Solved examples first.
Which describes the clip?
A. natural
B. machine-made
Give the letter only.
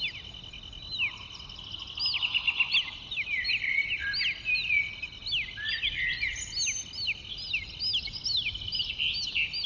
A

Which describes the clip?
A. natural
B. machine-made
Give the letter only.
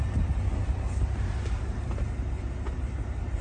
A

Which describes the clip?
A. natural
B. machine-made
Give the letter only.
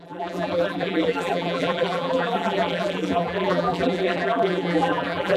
B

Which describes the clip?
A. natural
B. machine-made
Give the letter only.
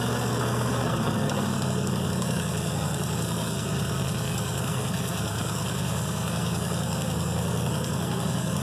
B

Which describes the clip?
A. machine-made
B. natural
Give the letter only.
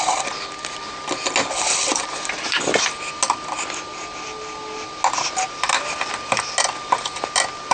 B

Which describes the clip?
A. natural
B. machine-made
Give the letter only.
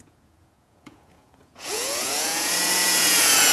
B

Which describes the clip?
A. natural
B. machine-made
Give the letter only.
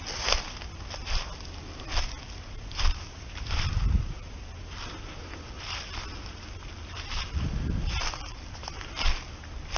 A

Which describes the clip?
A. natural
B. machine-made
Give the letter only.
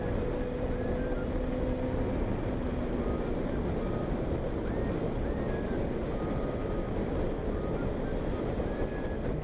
A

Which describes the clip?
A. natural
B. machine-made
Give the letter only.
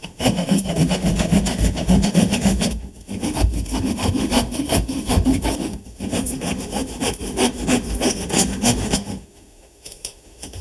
B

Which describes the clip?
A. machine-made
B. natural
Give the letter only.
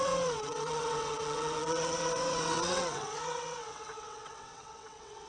A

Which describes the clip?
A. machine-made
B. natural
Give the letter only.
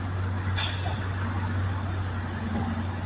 B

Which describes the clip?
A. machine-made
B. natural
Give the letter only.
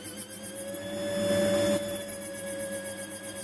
B